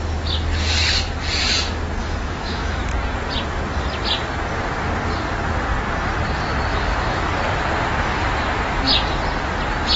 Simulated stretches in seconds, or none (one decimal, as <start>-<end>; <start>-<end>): 2.0-2.8; 6.7-7.3